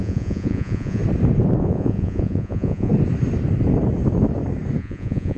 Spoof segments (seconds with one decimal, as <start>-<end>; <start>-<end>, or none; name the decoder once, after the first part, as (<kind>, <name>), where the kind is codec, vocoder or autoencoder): 0.0-1.0 (vocoder, Vocos); 1.6-2.9; 4.8-5.4